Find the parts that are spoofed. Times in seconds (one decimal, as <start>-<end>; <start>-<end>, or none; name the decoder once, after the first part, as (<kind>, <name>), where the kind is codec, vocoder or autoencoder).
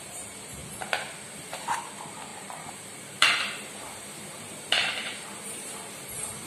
0.0-0.6 (vocoder, BigVGAN v2); 1.5-6.5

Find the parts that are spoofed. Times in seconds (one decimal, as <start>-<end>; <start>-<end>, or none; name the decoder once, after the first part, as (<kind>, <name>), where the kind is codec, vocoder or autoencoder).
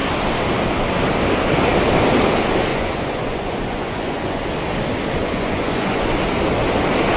2.7-4.4 (vocoder, Vocos); 5.2-6.1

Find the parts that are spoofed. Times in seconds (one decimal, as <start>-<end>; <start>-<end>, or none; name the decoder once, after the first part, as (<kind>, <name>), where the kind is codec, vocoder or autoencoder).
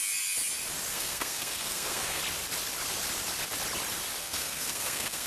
0.9-2.2 (codec, SNAC); 4.2-5.3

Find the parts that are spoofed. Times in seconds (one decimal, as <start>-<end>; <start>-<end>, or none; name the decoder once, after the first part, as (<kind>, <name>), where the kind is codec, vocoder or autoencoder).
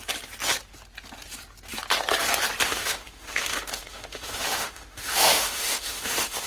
2.6-6.5 (autoencoder, DAC-VAE)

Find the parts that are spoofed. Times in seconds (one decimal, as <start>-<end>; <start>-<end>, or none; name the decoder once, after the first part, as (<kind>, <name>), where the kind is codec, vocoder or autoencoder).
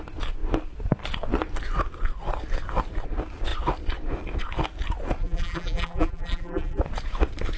5.2-6.8 (vocoder, BigVGAN v2)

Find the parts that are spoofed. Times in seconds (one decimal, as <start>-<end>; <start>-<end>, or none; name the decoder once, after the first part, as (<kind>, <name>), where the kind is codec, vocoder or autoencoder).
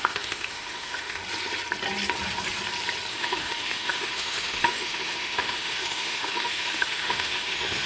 0.0-1.2 (autoencoder, DAC-VAE); 3.1-7.9